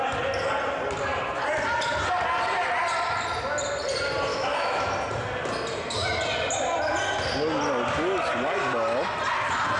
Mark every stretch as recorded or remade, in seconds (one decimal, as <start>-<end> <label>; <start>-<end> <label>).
0.0-4.3 recorded; 4.3-4.9 remade; 4.9-9.8 recorded